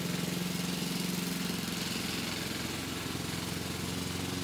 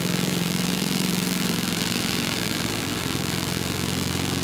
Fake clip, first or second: second